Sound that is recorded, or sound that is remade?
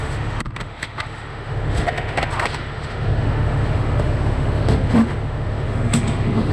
remade